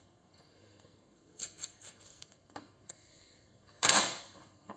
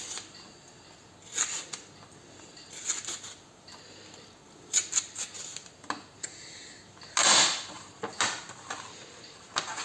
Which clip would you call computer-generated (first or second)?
first